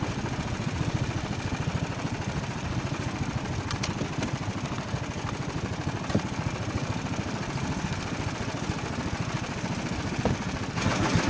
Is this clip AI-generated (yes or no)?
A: yes